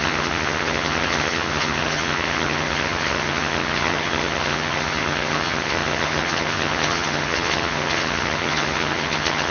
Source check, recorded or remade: remade